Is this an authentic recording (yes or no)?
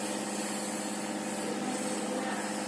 yes